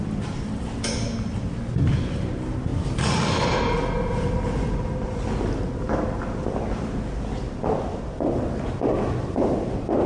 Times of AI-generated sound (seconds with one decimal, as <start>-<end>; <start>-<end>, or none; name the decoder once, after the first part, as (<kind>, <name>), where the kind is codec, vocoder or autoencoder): none